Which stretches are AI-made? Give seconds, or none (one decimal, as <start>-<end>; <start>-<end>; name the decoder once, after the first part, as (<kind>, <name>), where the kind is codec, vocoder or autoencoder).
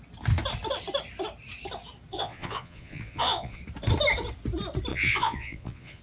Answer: 2.1-3.6 (vocoder, Vocos); 4.9-6.0